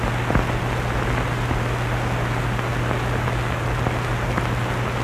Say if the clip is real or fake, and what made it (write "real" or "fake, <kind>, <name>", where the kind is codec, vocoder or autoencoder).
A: real